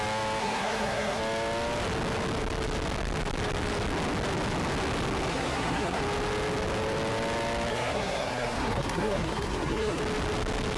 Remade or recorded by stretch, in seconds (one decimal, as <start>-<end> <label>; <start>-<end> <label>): 0.0-0.4 recorded; 0.4-1.2 remade; 1.2-5.3 recorded; 5.3-6.0 remade; 6.0-7.7 recorded; 7.7-10.0 remade; 10.0-10.8 recorded